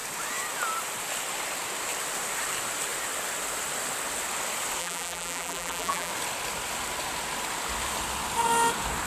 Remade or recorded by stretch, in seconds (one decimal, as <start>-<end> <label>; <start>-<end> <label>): 0.0-4.8 recorded; 4.8-6.1 remade; 6.1-9.1 recorded